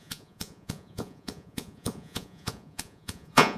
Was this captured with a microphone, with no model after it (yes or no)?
no